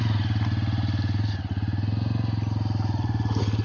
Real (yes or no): yes